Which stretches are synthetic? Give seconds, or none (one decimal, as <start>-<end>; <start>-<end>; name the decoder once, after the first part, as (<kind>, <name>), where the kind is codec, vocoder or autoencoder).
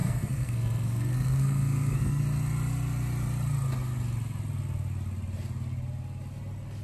0.0-2.2 (codec, SNAC)